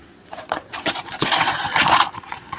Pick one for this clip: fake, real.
fake